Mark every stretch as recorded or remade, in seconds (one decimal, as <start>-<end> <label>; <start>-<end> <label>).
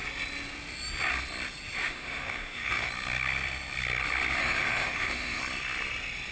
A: 0.0-1.8 recorded; 1.8-2.9 remade; 2.9-4.4 recorded; 4.4-5.4 remade; 5.4-6.3 recorded